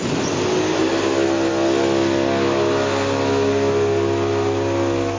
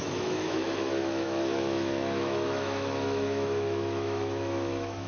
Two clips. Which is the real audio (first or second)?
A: first